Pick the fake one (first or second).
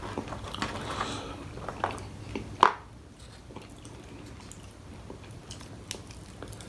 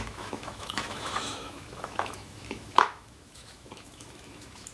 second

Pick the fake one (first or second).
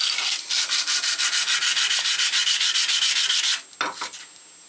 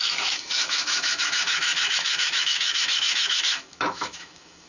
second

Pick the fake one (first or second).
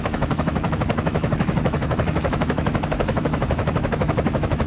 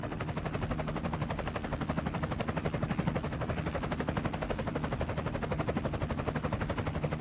first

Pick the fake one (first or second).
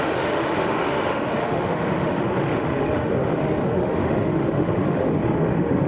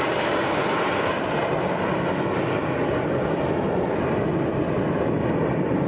first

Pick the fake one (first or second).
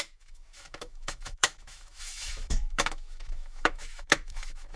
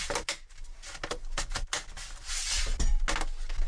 first